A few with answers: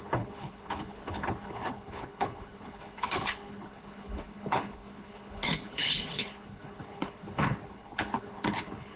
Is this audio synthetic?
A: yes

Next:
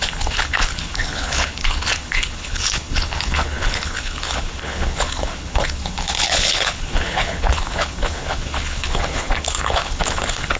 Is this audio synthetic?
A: yes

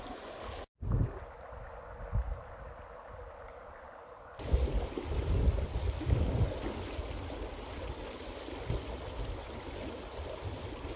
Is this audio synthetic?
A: no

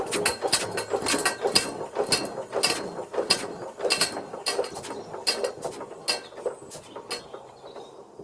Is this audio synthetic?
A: no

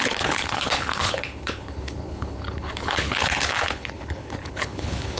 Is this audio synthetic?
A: yes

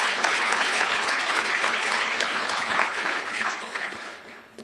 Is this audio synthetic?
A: yes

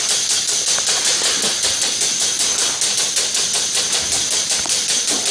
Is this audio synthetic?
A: no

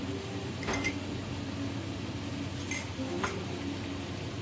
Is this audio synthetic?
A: no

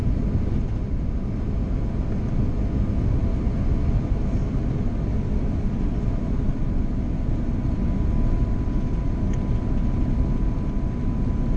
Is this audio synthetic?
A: no